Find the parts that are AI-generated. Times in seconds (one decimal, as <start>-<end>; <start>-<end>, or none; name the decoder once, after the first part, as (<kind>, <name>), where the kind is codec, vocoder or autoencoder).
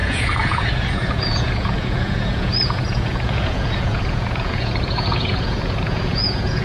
0.0-6.6 (vocoder, Vocos)